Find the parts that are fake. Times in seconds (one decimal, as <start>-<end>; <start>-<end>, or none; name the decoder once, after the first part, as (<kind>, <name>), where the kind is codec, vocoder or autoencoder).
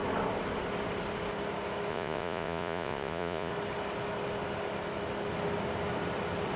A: 1.9-3.5 (vocoder, Vocos)